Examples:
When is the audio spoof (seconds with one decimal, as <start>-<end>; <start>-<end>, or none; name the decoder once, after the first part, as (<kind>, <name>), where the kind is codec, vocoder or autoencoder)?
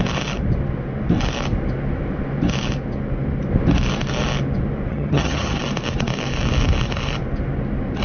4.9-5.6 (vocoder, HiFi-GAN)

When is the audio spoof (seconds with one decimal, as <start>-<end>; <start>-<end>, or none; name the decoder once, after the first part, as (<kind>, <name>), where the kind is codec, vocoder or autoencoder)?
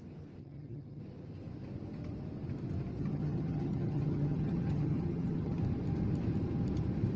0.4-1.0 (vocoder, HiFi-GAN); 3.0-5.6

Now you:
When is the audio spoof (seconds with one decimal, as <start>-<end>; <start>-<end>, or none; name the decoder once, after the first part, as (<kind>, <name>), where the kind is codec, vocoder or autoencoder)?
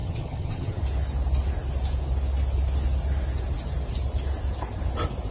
0.0-0.8 (vocoder, HiFi-GAN)